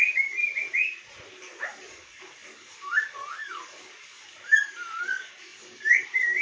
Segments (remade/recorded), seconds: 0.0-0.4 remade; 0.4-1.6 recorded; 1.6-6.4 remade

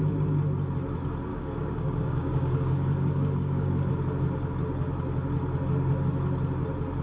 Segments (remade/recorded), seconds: 0.0-1.3 recorded; 1.3-3.9 remade; 3.9-7.0 recorded

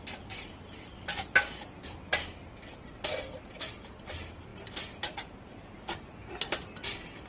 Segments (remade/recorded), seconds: 0.0-7.3 recorded

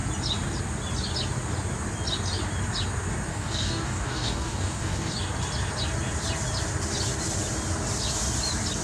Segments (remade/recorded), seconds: 0.0-3.3 recorded; 3.3-5.1 remade; 5.1-8.8 recorded

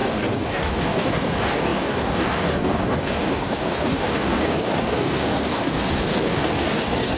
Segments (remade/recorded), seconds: 0.0-7.2 remade

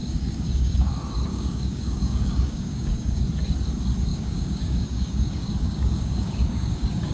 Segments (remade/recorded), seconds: 0.0-0.9 remade; 0.9-1.3 recorded; 1.3-3.2 remade; 3.2-4.1 recorded; 4.1-7.1 remade

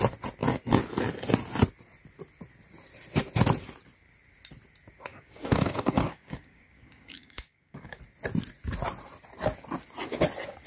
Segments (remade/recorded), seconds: 0.0-5.1 recorded; 5.1-8.0 remade; 8.0-10.7 recorded